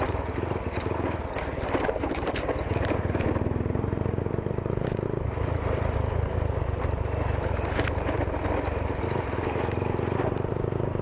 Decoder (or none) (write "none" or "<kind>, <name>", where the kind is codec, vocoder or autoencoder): none